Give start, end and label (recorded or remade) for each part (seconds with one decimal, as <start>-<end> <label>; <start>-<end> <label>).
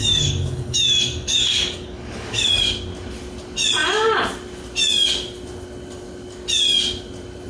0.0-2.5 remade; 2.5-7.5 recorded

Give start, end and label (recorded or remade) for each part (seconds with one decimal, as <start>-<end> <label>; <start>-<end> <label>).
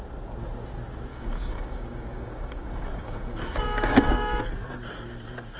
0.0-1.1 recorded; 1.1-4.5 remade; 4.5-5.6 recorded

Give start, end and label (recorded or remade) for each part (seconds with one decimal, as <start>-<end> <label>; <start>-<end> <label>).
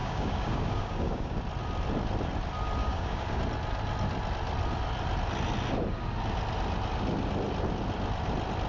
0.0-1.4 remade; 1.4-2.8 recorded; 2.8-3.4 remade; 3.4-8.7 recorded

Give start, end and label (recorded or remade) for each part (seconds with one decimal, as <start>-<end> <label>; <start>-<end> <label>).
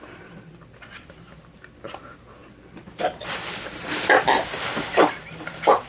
0.0-5.9 recorded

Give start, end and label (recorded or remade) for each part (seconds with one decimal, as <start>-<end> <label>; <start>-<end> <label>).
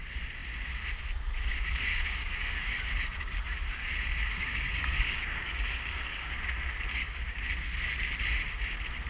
0.0-1.5 recorded; 1.5-6.4 remade; 6.4-6.9 recorded; 6.9-7.4 remade; 7.4-9.1 recorded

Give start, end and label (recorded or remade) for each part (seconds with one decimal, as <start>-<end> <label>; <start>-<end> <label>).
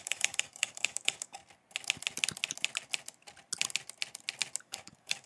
0.0-1.4 remade; 1.4-4.6 recorded; 4.6-5.3 remade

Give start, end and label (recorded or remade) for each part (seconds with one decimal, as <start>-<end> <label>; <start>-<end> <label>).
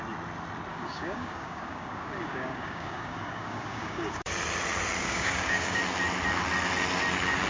0.0-0.7 recorded; 0.7-4.3 remade; 4.3-5.0 recorded; 5.0-5.8 remade; 5.8-7.5 recorded